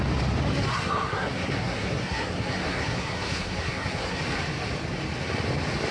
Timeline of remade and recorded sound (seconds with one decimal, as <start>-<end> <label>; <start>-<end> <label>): 0.0-0.7 recorded; 0.7-4.2 remade; 4.2-5.9 recorded